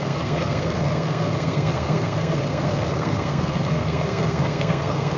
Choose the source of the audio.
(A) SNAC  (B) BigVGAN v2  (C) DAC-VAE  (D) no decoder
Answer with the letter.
A